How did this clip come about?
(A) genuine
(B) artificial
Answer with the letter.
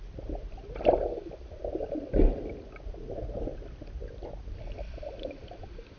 A